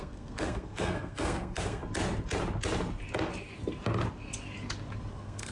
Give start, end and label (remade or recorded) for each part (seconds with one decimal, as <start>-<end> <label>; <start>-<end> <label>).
0.0-1.8 remade; 1.8-5.1 recorded; 5.1-5.5 remade